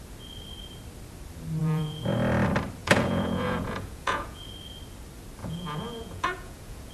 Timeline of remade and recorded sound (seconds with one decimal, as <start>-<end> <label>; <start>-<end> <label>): 0.0-1.6 recorded; 1.6-2.1 remade; 2.1-2.8 recorded; 2.8-4.5 remade; 4.5-5.4 recorded; 5.4-6.9 remade